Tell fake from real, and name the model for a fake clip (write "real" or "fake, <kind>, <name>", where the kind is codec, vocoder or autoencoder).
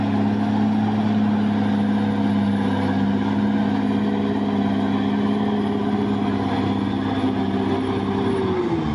real